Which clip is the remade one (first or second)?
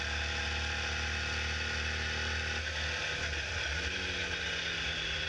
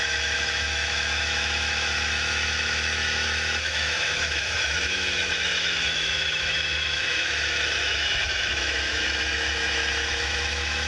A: second